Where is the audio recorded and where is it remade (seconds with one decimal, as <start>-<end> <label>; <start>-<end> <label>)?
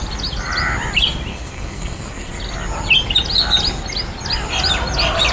0.0-1.3 recorded; 1.3-2.3 remade; 2.3-5.3 recorded